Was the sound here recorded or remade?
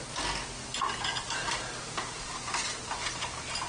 recorded